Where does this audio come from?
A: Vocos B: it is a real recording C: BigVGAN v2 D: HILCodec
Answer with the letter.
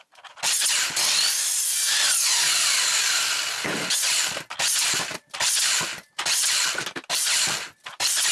B